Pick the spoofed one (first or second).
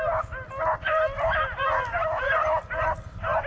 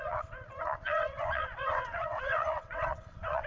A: second